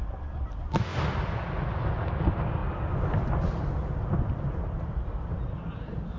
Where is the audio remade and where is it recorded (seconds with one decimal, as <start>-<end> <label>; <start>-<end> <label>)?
0.0-2.6 recorded; 2.6-4.6 remade; 4.6-6.2 recorded